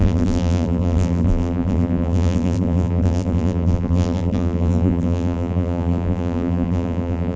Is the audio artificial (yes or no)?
yes